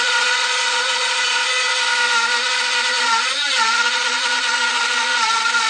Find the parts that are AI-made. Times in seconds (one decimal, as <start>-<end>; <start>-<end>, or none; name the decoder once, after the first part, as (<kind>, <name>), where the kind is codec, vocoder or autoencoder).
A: 0.0-1.7 (vocoder, Vocos); 2.9-5.7